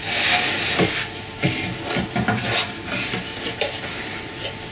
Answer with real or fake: real